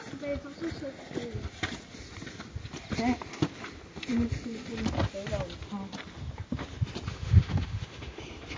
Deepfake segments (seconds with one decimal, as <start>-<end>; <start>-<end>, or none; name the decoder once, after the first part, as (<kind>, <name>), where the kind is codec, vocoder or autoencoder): 7.1-8.2 (autoencoder, DAC-VAE)